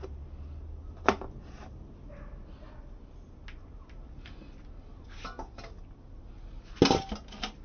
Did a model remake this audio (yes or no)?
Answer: no